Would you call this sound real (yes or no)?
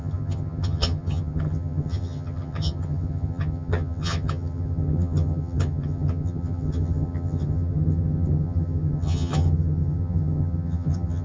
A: no